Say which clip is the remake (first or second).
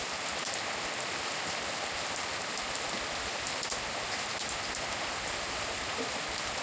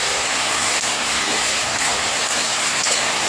second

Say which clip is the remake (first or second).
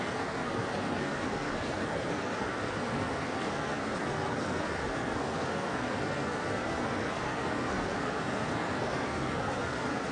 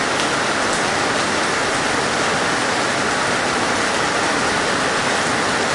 first